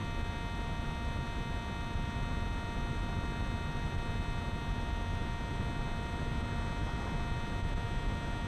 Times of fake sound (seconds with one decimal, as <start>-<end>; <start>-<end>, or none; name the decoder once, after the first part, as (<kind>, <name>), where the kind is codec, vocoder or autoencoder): none